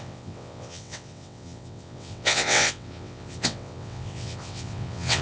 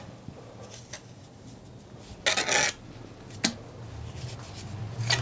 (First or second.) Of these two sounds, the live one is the second